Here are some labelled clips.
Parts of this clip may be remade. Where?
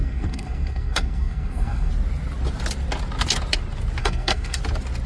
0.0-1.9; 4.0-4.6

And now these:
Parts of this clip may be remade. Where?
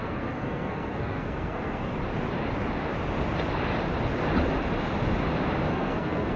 0.0-1.9; 5.7-6.4